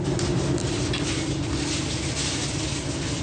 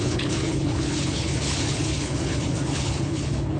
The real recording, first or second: first